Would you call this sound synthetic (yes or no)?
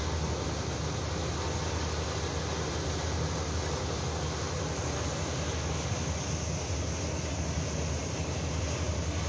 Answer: no